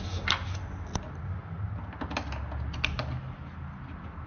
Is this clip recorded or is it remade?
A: recorded